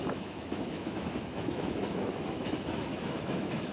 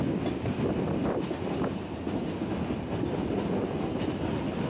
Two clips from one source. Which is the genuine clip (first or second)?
second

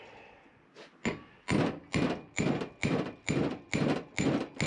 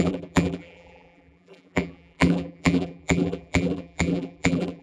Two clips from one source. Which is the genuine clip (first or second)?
first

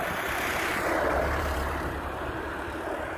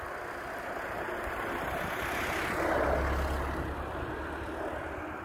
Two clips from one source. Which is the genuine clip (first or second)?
second